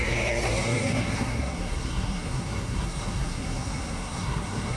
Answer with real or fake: fake